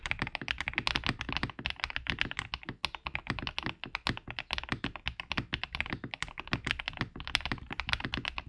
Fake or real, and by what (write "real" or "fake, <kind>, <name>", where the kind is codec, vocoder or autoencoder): real